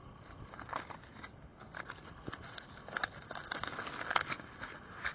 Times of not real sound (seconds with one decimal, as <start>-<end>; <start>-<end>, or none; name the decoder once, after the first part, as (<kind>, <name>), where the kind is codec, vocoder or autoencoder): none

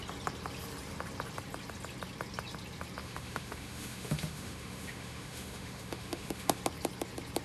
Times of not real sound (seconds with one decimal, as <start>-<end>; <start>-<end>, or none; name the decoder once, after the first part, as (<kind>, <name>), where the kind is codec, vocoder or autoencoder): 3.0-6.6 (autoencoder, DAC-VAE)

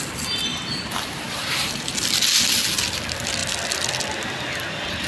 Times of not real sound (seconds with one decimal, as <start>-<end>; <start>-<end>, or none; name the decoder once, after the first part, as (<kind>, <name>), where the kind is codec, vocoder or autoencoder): 0.5-1.9 (vocoder, BigVGAN v2)

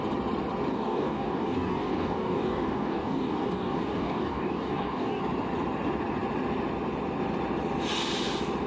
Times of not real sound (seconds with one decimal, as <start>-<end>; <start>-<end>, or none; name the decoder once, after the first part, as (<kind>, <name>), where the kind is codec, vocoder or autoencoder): 0.7-5.2 (codec, DAC)